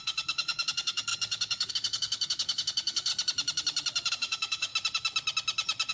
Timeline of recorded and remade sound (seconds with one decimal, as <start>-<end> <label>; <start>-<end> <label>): 0.0-3.1 remade; 3.1-4.1 recorded; 4.1-4.7 remade; 4.7-5.9 recorded